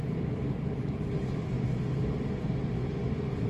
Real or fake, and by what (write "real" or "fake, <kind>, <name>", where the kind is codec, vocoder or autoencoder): fake, vocoder, BigVGAN v2